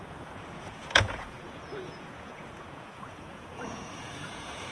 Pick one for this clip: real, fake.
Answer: fake